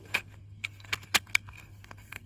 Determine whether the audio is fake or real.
fake